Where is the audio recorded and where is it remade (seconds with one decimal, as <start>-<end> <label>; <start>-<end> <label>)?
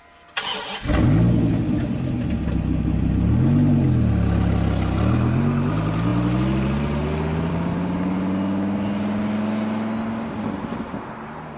0.0-11.6 recorded